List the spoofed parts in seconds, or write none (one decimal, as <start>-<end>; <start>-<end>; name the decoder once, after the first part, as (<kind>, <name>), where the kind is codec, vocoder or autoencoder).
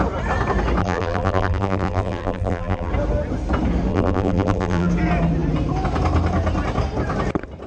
0.8-2.9 (vocoder, BigVGAN v2); 3.9-4.9